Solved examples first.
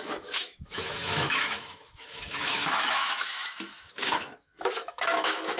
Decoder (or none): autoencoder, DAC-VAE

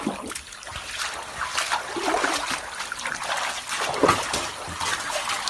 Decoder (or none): none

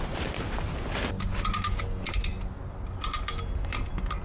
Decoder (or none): none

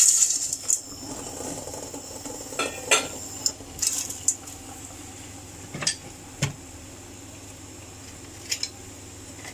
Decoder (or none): none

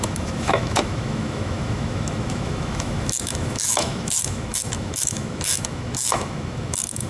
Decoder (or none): autoencoder, DAC-VAE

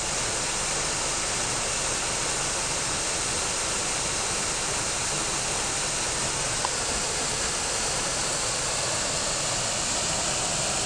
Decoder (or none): none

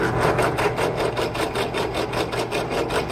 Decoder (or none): none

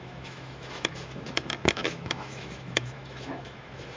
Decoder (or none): autoencoder, DAC-VAE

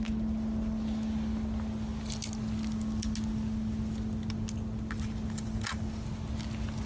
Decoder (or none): none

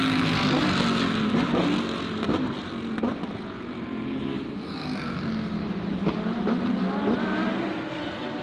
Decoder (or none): none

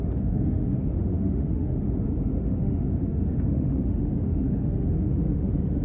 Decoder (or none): autoencoder, DAC-VAE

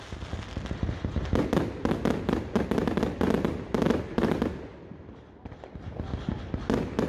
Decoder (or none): none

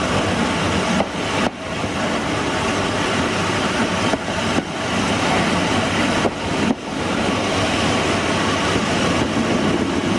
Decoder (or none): none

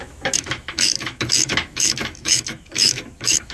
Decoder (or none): autoencoder, DAC-VAE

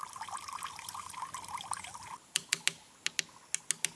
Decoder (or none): none